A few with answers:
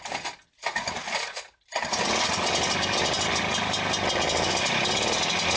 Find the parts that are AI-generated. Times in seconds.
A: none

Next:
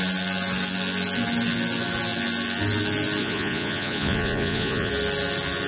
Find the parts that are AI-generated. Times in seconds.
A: 3.2-4.9 (vocoder, Vocos)

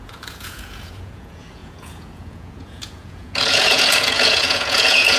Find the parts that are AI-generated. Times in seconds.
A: 0.0-5.2 (vocoder, Vocos)

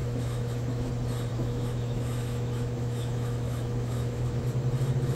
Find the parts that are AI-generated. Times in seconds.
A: 0.0-0.9 (autoencoder, DAC-VAE); 1.3-4.4

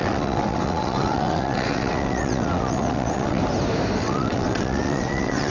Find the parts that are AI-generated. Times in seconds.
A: 0.0-3.4 (vocoder, WaveNeXt); 4.0-5.5

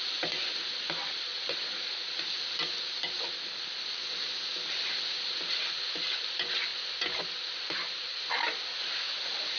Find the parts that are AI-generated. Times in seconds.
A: none